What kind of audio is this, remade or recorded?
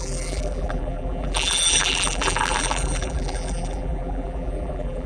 remade